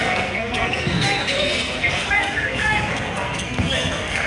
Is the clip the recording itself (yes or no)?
no